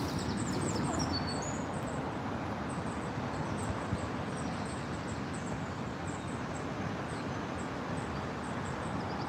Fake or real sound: real